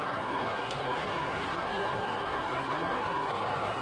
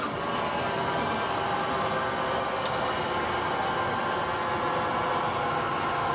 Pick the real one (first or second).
second